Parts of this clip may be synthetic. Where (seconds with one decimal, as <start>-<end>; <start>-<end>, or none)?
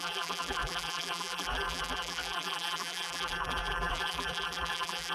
0.0-5.1